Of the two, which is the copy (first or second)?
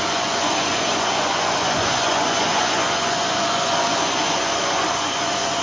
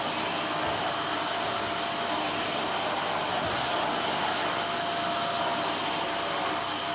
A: first